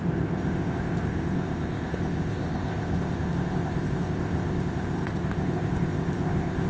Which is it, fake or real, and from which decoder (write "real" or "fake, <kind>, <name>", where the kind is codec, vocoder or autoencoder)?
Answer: fake, codec, ZipCodec